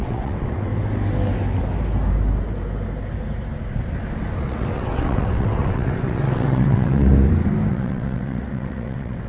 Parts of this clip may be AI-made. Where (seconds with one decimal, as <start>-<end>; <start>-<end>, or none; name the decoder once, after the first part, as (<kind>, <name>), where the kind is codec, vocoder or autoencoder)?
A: 0.0-0.7 (vocoder, WaveNeXt); 4.4-7.1; 7.7-9.3